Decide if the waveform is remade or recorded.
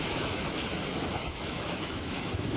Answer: remade